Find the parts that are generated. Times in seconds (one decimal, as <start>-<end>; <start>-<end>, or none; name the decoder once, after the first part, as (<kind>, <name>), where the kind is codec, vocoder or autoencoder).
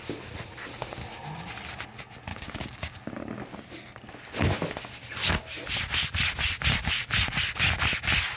2.3-3.0 (codec, DAC)